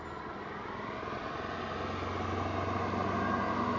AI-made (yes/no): no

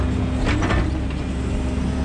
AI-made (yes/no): no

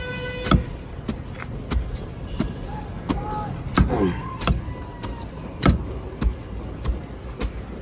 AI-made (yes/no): no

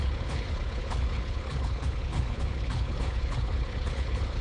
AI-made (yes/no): yes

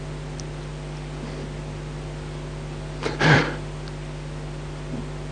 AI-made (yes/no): no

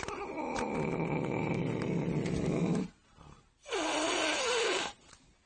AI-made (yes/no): no